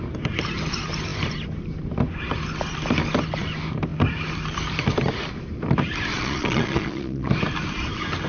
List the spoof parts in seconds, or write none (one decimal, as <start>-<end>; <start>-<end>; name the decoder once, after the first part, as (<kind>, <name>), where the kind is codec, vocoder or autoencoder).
6.1-7.3 (vocoder, Vocos)